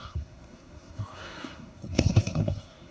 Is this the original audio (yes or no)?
no